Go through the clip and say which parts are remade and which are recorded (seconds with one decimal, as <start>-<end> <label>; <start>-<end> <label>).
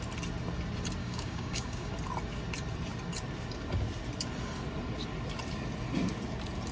0.0-1.0 recorded; 1.0-1.9 remade; 1.9-6.7 recorded